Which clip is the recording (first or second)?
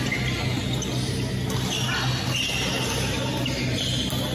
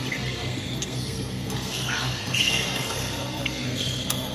first